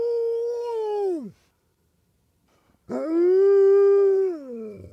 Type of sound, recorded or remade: recorded